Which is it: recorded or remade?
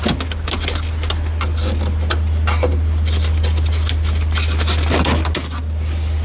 recorded